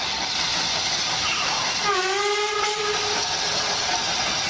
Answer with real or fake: real